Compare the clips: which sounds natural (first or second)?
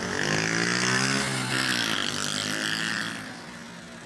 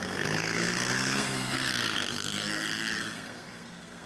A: first